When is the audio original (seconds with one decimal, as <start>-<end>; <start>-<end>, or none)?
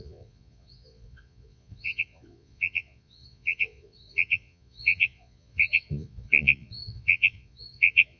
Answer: none